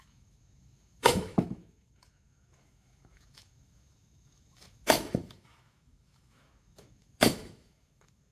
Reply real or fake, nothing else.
fake